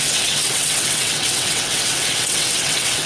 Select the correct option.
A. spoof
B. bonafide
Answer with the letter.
A